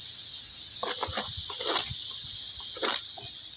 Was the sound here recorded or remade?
recorded